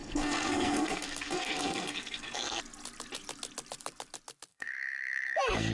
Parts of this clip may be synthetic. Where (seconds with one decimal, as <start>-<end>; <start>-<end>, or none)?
0.0-2.6; 4.5-5.7